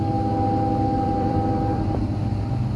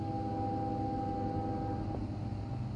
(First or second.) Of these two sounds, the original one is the second